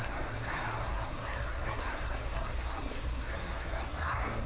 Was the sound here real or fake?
fake